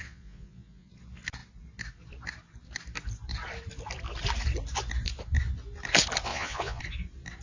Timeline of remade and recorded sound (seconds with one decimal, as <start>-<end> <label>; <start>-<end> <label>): 0.0-0.9 remade; 0.9-6.3 recorded; 6.3-6.8 remade; 6.8-7.4 recorded